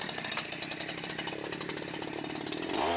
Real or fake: fake